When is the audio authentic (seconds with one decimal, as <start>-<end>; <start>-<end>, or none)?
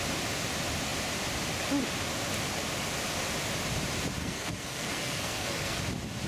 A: 0.0-4.2; 5.8-6.3